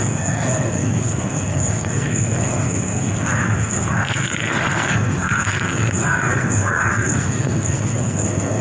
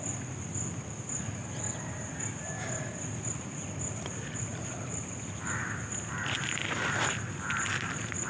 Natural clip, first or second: second